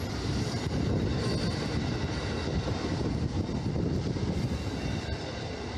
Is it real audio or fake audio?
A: real